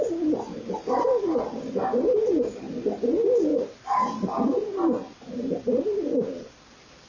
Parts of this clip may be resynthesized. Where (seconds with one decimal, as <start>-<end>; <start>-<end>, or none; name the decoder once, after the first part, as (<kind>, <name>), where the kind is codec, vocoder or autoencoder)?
0.8-2.7 (vocoder, BigVGAN v2); 3.5-6.6